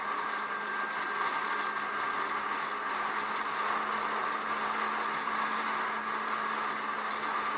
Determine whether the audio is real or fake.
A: real